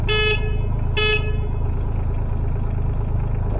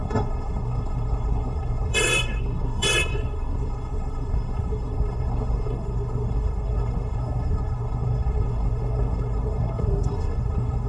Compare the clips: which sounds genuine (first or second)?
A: first